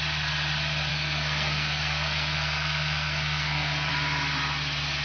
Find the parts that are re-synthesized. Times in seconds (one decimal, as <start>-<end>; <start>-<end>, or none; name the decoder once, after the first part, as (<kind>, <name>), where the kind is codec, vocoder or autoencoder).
0.9-3.9 (codec, SNAC)

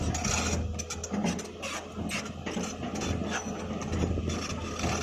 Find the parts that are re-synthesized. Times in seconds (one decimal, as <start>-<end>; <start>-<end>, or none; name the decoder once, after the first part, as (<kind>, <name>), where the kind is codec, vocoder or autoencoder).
none

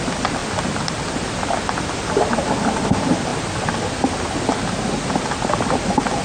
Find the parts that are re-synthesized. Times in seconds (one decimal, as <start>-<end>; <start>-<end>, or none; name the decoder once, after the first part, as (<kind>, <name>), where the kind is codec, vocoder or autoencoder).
none

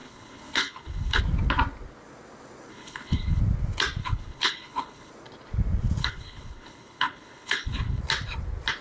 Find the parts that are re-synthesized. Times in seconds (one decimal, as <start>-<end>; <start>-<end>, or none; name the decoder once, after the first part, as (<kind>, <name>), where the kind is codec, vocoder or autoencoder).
0.0-1.2 (codec, HILCodec); 2.7-3.4; 4.0-5.1; 6.0-8.0

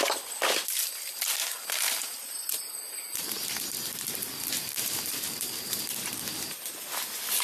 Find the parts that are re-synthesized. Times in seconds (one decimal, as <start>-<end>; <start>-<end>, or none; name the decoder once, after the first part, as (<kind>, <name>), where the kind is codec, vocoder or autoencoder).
1.4-5.8 (vocoder, BigVGAN v2)

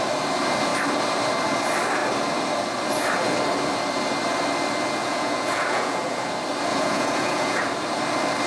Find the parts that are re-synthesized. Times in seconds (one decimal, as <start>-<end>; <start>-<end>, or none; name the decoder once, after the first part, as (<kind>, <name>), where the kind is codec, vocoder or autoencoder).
5.0-6.2 (vocoder, Vocos); 6.7-7.6

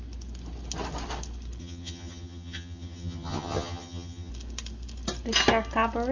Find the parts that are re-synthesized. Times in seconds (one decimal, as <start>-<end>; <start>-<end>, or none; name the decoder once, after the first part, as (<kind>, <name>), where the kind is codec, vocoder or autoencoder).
1.6-4.3 (vocoder, HiFi-GAN)

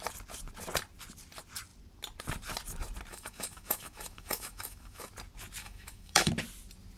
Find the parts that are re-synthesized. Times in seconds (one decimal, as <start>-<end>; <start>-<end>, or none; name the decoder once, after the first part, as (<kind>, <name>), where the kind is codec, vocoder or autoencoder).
3.1-5.1 (autoencoder, DAC-VAE); 5.6-6.3